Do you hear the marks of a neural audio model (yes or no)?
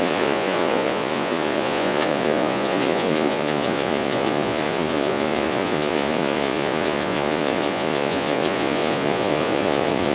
yes